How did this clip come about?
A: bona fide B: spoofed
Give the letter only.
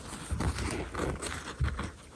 A